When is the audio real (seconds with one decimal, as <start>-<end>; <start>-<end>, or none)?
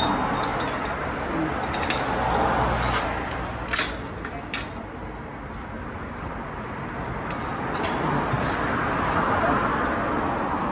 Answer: 0.0-10.7